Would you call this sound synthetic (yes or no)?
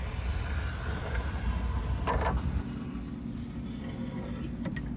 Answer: no